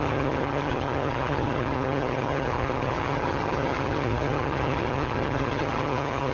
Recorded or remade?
remade